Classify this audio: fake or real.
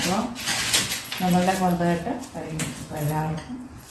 fake